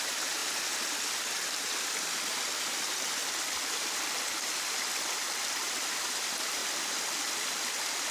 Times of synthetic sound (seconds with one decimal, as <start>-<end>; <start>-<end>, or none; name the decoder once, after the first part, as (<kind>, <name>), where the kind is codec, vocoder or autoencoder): none